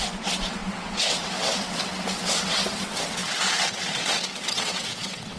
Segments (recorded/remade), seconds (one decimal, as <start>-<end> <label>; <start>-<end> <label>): 0.0-5.4 remade